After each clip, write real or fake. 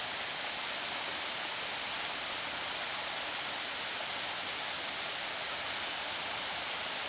real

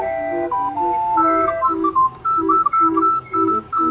fake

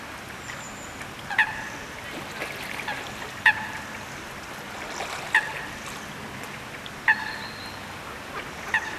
real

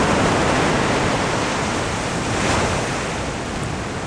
real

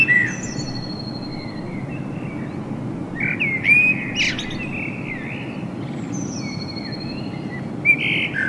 real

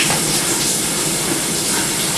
real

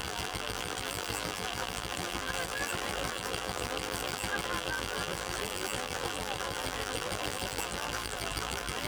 fake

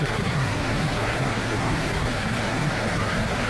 fake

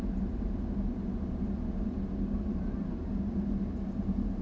real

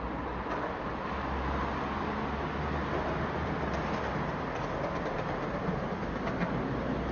real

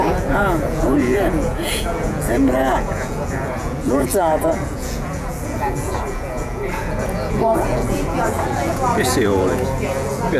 fake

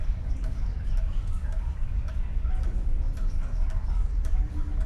fake